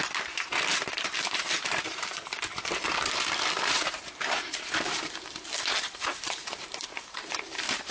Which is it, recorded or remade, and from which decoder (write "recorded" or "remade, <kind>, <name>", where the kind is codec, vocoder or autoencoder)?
remade, vocoder, BigVGAN v2